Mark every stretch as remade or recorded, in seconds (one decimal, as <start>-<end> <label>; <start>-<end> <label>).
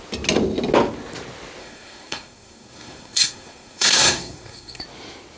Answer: 0.0-1.6 recorded; 1.6-4.8 remade; 4.8-5.4 recorded